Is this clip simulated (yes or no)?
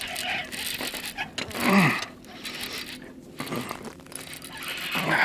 no